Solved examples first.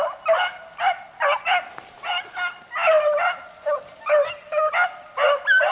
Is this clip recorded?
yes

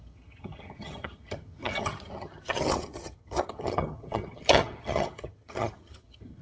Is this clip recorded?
no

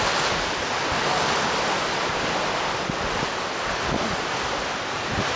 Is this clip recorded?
yes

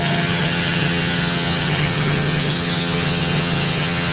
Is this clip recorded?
no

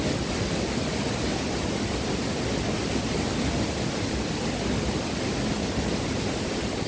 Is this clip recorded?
yes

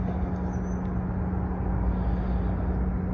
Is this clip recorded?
yes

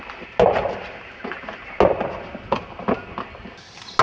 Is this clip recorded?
yes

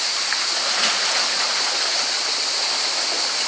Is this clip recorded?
yes